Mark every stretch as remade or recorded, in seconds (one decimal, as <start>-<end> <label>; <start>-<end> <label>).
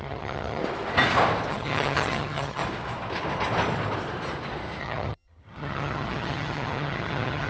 0.0-0.6 remade; 0.6-1.5 recorded; 1.5-2.6 remade; 2.6-4.8 recorded; 4.8-7.5 remade